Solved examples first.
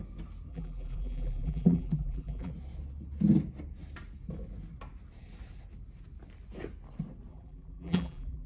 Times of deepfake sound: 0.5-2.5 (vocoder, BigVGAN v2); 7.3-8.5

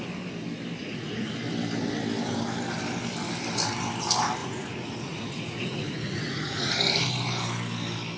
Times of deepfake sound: 0.8-1.3 (vocoder, Vocos); 4.4-6.7

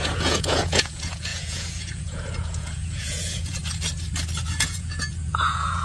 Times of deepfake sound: 0.0-3.6 (vocoder, Vocos); 4.5-5.8

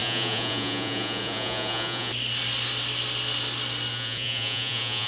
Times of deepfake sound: 0.0-2.1 (vocoder, Vocos); 3.9-5.1

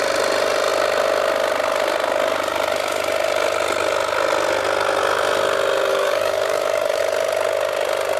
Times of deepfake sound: 5.9-7.0 (codec, DAC)

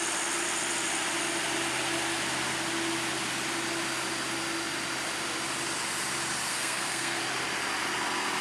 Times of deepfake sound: 6.5-7.2 (codec, SNAC)

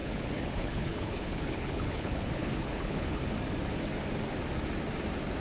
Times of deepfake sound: 0.0-3.2 (codec, HILCodec)